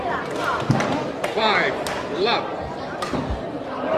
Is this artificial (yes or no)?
no